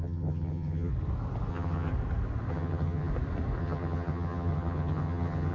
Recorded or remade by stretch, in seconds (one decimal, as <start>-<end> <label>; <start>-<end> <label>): 0.0-0.9 remade; 0.9-1.5 recorded; 1.5-1.9 remade; 1.9-2.5 recorded; 2.5-3.1 remade; 3.1-3.6 recorded; 3.6-5.5 remade